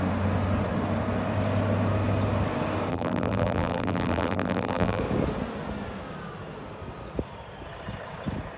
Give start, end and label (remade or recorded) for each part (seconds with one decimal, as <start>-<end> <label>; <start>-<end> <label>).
0.0-2.9 recorded; 2.9-5.0 remade; 5.0-8.6 recorded

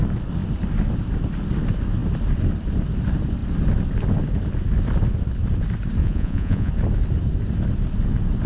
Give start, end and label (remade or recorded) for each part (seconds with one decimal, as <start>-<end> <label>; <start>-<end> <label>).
0.0-6.0 recorded; 6.0-6.7 remade; 6.7-8.5 recorded

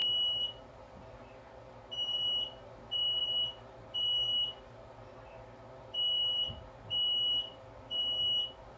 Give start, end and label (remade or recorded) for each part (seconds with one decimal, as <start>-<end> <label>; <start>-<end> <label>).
0.0-8.8 recorded

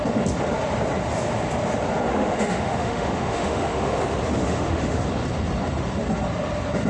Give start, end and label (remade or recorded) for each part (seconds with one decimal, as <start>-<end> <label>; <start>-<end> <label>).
0.0-2.1 recorded; 2.1-4.0 remade; 4.0-4.4 recorded; 4.4-5.0 remade; 5.0-6.9 recorded

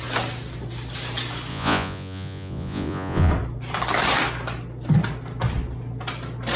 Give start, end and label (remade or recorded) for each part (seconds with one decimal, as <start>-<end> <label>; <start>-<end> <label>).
0.0-1.5 recorded; 1.5-3.3 remade; 3.3-6.6 recorded

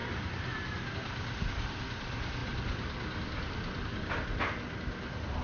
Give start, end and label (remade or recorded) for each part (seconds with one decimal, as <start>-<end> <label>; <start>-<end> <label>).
0.0-5.4 recorded

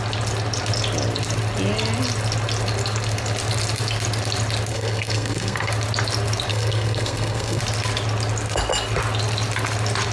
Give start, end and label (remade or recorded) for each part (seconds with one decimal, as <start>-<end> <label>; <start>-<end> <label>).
0.0-4.7 recorded; 4.7-5.7 remade; 5.7-6.5 recorded; 6.5-7.6 remade; 7.6-10.1 recorded